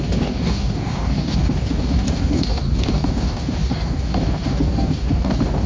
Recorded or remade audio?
remade